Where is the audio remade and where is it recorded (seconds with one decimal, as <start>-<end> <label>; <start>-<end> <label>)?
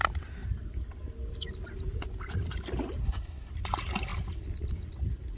0.0-3.0 recorded; 3.0-3.5 remade; 3.5-5.4 recorded